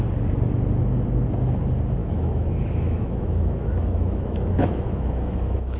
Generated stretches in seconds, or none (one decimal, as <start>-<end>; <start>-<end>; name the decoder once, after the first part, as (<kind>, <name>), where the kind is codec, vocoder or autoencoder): 2.0-5.8 (autoencoder, DAC-VAE)